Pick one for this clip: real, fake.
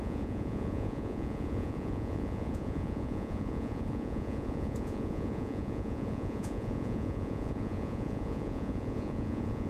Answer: fake